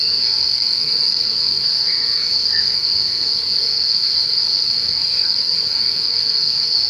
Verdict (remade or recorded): remade